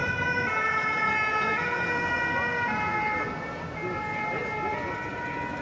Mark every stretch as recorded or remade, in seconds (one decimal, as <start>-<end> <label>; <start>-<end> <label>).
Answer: 0.0-5.6 recorded